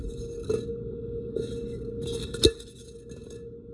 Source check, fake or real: real